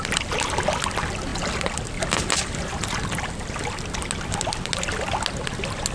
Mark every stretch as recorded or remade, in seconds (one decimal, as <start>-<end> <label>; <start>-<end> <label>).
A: 0.0-5.9 recorded